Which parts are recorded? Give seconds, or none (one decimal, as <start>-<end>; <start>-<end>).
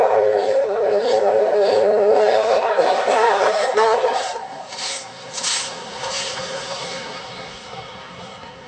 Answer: none